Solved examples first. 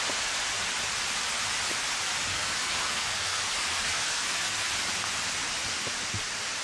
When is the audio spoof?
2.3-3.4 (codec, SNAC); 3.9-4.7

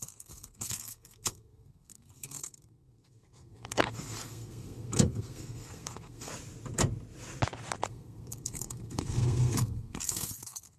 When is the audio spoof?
0.0-6.3 (codec, SNAC); 7.9-10.8

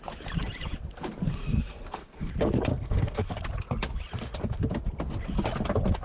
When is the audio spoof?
1.3-2.3 (codec, SNAC); 2.7-3.3

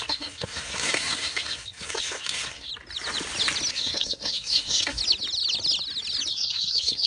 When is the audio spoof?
0.0-2.7 (codec, SNAC); 3.7-5.0; 6.3-7.1

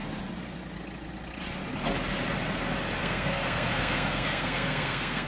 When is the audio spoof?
3.0-5.3 (codec, SNAC)